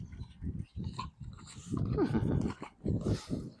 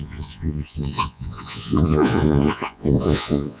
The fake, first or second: second